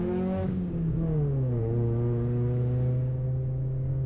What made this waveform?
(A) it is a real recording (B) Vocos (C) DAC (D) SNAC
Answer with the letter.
C